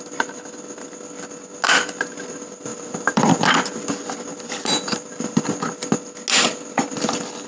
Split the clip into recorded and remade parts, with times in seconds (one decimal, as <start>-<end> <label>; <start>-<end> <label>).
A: 0.0-2.7 recorded; 2.7-3.5 remade; 3.5-4.3 recorded; 4.3-5.4 remade; 5.4-7.5 recorded

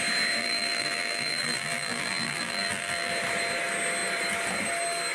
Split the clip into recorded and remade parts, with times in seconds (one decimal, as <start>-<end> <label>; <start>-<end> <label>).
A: 0.0-0.4 recorded; 0.4-3.1 remade; 3.1-5.1 recorded